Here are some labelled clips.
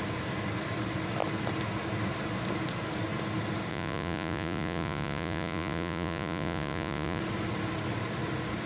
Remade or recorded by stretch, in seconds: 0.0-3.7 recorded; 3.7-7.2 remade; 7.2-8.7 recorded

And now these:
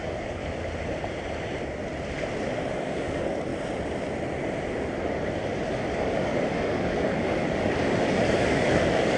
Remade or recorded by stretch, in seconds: 0.0-0.4 remade; 0.4-2.7 recorded; 2.7-3.5 remade; 3.5-5.7 recorded; 5.7-9.2 remade

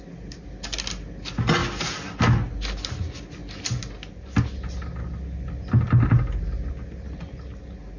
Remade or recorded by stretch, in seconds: 0.0-8.0 recorded